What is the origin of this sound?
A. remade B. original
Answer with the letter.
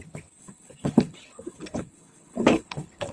A